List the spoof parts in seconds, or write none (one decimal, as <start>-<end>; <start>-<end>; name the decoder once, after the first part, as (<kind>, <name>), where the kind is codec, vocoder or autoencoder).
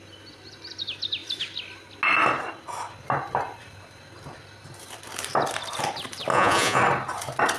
6.3-6.8 (vocoder, Vocos)